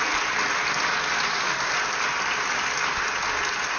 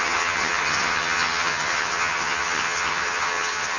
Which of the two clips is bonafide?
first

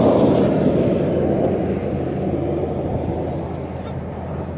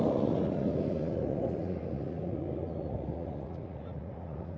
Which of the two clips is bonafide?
first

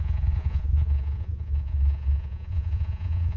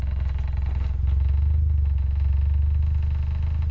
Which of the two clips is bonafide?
second